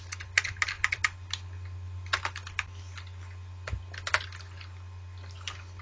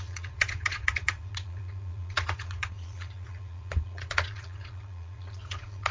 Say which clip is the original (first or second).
first